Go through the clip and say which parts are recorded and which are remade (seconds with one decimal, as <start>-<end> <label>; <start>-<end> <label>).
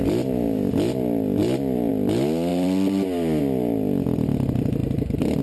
0.0-1.4 recorded; 1.4-1.9 remade; 1.9-2.5 recorded; 2.5-3.4 remade; 3.4-4.8 recorded; 4.8-5.4 remade